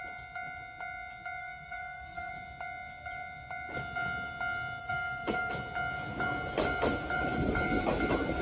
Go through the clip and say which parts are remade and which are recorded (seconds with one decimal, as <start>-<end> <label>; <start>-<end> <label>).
0.0-1.4 recorded; 1.4-2.3 remade; 2.3-4.8 recorded; 4.8-5.5 remade; 5.5-8.4 recorded